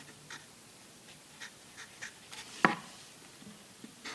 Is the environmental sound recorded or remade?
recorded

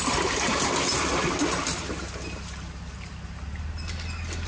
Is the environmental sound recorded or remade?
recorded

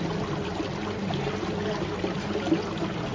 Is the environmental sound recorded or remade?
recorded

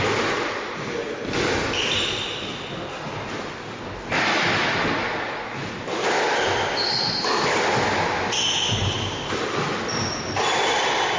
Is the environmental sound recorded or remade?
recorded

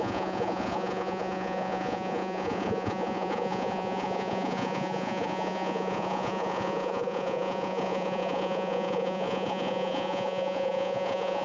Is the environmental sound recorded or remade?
remade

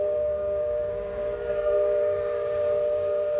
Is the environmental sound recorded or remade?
remade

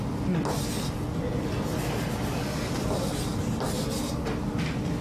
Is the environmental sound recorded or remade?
recorded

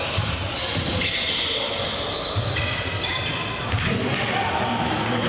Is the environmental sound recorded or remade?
recorded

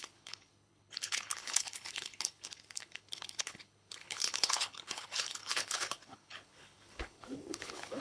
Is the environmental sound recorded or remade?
remade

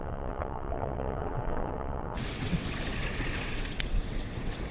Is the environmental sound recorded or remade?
remade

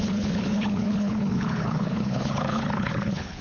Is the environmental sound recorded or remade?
remade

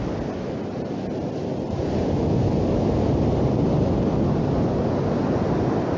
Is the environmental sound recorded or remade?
recorded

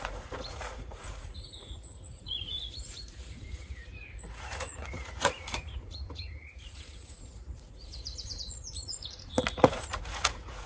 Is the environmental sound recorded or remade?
remade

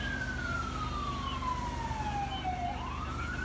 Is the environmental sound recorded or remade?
recorded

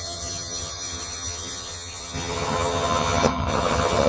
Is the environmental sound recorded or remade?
remade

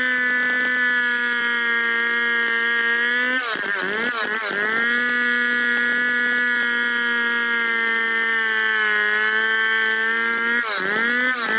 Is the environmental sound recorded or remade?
recorded